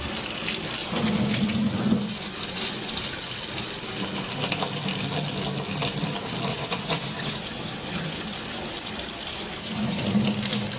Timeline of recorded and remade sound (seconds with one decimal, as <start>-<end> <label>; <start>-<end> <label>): 0.0-0.8 recorded; 0.8-3.3 remade; 3.3-6.5 recorded; 6.5-8.7 remade; 8.7-9.3 recorded; 9.3-10.0 remade; 10.0-10.8 recorded